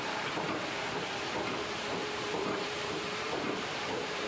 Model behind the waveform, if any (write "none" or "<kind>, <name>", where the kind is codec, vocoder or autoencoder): vocoder, BigVGAN v2